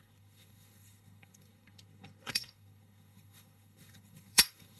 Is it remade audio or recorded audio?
remade